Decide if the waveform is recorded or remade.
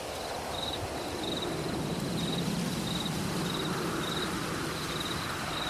recorded